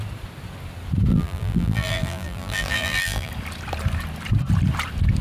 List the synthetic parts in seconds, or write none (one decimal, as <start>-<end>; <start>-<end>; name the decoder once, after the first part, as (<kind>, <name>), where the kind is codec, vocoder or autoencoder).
1.1-3.3 (vocoder, BigVGAN v2)